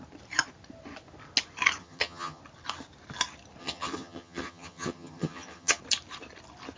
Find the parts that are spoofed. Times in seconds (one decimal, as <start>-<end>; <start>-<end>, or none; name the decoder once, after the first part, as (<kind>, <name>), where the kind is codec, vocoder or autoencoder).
1.8-2.4 (vocoder, HiFi-GAN); 3.6-5.8